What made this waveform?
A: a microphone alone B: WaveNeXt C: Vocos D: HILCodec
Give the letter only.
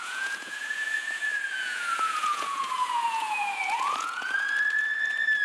C